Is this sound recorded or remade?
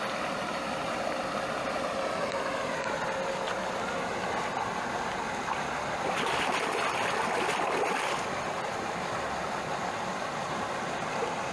recorded